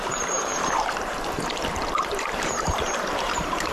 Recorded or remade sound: remade